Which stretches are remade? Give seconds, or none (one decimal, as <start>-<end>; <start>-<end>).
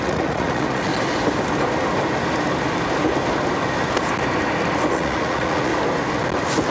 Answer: 0.0-0.9; 4.9-5.7